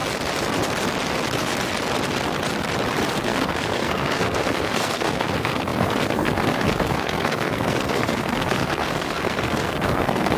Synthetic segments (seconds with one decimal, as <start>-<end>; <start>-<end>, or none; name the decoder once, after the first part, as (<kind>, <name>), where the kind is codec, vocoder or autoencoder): 3.1-10.4 (codec, SNAC)

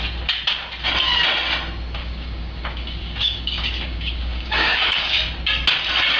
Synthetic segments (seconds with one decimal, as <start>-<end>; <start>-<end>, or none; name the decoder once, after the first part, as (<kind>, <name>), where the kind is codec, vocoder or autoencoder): 2.0-5.2 (codec, DAC)